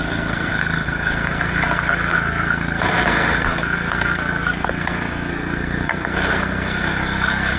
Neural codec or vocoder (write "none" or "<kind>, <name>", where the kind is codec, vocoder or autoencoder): codec, SNAC